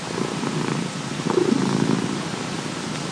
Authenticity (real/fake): fake